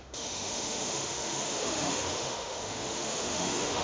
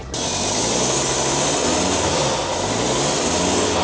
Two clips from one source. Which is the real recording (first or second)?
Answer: second